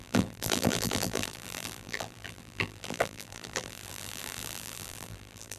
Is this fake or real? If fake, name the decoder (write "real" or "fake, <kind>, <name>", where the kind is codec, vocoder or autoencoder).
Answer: fake, vocoder, BigVGAN v2